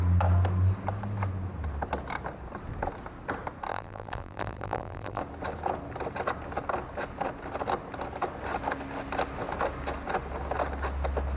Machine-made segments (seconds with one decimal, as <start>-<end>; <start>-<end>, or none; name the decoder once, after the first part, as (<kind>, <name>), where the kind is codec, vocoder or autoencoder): 3.7-5.2 (vocoder, BigVGAN v2)